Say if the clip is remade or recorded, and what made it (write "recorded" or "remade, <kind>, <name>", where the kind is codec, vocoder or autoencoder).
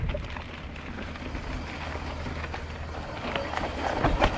recorded